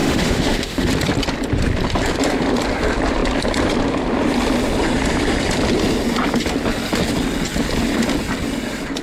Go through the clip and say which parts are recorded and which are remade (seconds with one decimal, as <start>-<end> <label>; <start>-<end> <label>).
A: 0.0-0.9 remade; 0.9-9.0 recorded